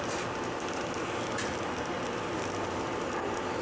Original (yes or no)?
yes